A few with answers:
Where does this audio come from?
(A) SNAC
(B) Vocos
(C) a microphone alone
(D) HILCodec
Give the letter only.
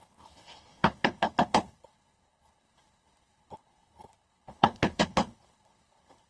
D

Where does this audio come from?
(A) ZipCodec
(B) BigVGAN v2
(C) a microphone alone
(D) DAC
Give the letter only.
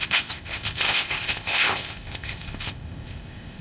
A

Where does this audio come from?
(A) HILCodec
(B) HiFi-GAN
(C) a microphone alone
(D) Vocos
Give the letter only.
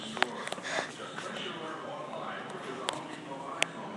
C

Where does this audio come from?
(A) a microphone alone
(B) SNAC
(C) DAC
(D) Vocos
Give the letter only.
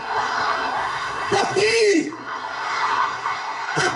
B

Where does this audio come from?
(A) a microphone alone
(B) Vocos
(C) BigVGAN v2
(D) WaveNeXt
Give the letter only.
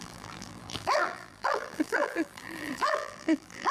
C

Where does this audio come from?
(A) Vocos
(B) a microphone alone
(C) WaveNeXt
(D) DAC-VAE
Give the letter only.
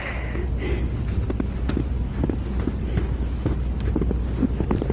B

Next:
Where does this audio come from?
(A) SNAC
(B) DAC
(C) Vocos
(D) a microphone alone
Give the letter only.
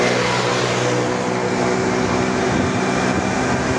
D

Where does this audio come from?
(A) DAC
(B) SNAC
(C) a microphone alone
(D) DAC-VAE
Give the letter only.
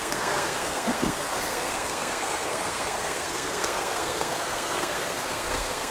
B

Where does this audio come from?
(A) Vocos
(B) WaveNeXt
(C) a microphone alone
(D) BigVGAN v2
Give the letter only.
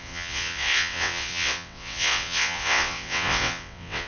B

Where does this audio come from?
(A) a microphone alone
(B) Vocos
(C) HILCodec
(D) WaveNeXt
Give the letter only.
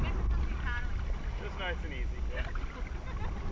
A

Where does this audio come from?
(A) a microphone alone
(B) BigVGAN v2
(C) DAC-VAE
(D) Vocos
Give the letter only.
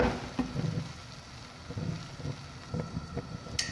A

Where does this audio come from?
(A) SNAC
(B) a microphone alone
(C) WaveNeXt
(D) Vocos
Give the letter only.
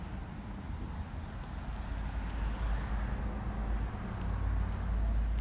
B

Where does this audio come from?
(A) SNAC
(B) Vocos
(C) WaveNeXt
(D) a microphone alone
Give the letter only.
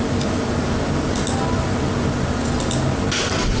D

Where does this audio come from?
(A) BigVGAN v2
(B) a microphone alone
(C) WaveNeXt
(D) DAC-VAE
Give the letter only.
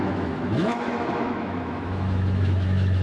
D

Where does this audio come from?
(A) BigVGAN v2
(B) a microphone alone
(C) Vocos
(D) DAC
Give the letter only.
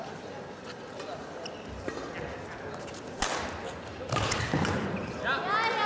B